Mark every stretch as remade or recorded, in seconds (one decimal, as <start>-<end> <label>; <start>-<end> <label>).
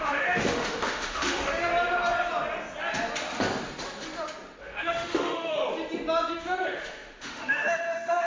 0.0-1.7 remade; 1.7-4.6 recorded; 4.6-5.6 remade; 5.6-6.3 recorded; 6.3-8.3 remade